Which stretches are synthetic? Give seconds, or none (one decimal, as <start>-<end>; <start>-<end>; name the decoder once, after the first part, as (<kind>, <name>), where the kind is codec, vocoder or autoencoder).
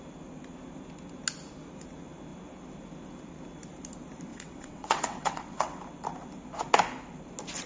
4.3-5.8 (vocoder, WaveNeXt)